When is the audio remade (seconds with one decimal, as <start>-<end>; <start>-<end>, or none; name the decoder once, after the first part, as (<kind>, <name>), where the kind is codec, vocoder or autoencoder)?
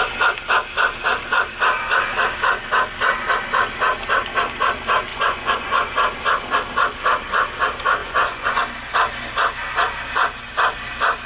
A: 5.1-5.9 (vocoder, Vocos); 8.0-8.6